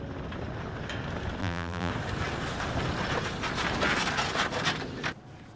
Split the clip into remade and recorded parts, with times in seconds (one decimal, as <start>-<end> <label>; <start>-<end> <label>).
0.0-1.4 recorded; 1.4-1.9 remade; 1.9-5.5 recorded